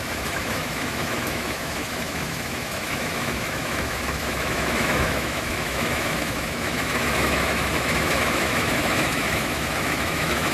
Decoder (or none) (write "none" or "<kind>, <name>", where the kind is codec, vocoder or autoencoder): autoencoder, DAC-VAE